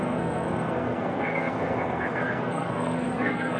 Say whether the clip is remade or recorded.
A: remade